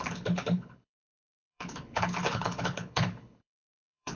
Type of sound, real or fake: fake